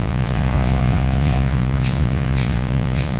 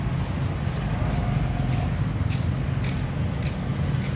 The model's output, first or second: first